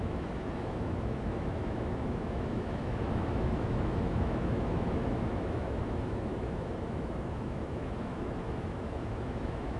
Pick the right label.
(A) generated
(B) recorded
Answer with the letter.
A